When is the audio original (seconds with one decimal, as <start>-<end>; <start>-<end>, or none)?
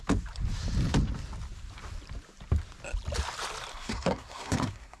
0.0-3.7